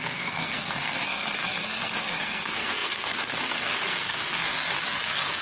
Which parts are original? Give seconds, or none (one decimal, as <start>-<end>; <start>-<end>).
none